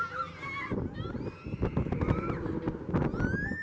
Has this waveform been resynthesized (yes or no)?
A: no